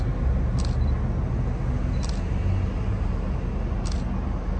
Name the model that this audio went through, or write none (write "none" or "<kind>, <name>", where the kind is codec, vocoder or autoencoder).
none